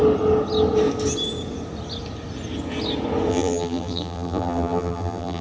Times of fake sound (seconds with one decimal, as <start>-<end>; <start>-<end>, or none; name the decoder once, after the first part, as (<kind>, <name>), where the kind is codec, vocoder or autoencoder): 3.3-5.4 (vocoder, BigVGAN v2)